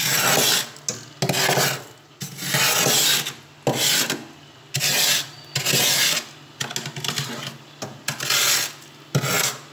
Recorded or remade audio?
recorded